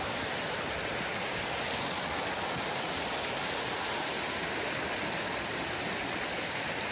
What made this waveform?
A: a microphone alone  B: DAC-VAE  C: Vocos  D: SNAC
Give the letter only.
A